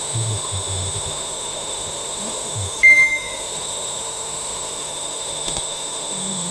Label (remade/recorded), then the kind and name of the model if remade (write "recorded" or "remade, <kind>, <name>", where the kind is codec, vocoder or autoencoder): remade, autoencoder, DAC-VAE